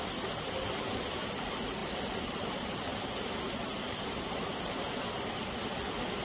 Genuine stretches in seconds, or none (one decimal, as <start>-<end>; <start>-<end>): 0.0-6.2